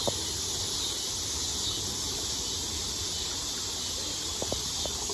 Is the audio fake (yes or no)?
no